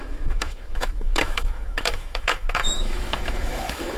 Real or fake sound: fake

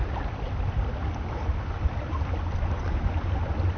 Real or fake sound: real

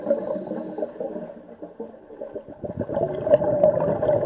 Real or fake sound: real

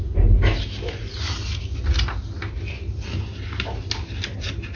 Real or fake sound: real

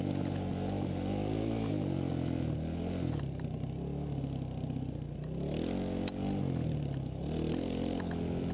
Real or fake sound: real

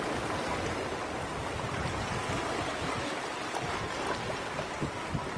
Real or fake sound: real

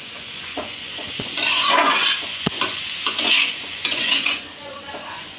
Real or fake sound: fake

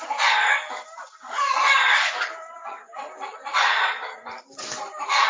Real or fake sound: real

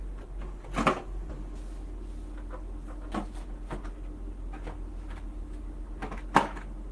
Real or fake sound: real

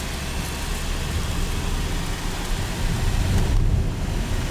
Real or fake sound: real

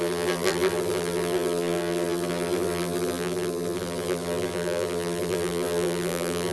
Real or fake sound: fake